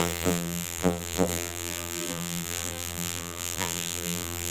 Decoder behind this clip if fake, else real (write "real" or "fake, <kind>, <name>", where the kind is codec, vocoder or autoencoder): fake, vocoder, BigVGAN v2